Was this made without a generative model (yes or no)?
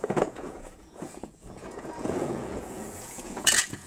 no